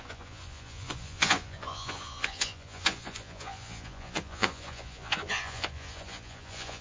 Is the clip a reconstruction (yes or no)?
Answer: yes